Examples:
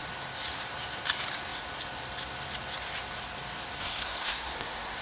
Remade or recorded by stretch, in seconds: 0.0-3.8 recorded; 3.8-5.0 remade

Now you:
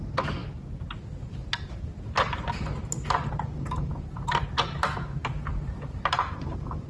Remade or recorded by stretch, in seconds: 0.0-6.9 recorded